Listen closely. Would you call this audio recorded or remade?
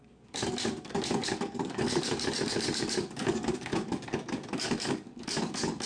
remade